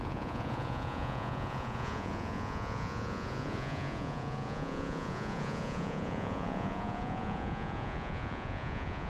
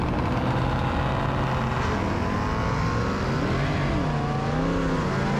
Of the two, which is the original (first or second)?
second